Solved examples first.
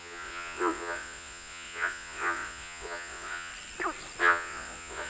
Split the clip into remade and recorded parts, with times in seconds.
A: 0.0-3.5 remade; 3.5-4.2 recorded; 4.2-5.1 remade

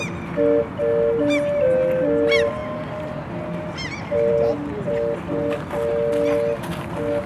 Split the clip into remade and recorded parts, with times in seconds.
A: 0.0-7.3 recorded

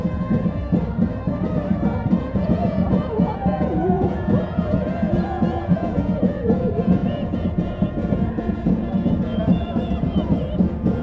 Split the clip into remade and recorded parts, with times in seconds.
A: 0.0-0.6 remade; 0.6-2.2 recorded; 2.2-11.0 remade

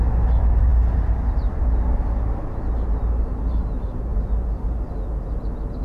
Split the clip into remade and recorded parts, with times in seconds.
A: 0.0-5.8 recorded

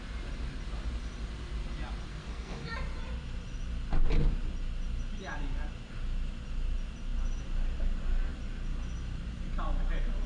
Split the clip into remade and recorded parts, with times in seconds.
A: 0.0-2.1 recorded; 2.1-2.7 remade; 2.7-10.3 recorded